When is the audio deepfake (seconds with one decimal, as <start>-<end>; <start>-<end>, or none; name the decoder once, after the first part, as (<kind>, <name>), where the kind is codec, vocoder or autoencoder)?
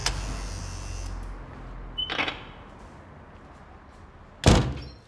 none